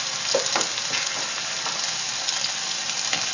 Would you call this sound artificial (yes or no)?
no